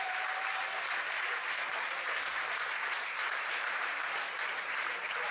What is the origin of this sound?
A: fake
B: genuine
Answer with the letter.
A